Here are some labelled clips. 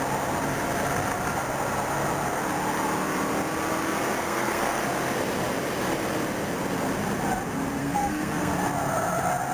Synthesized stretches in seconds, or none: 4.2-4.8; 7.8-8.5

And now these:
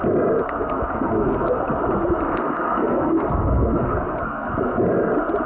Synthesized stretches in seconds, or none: 0.6-1.6; 2.3-4.5

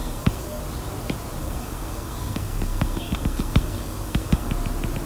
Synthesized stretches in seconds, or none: 0.0-0.6; 1.4-4.5

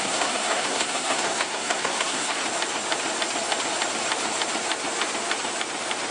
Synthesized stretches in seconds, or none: 0.0-2.4

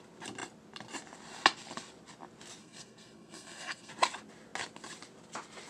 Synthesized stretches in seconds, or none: 2.6-3.9